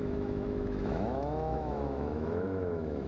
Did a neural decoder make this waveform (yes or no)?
yes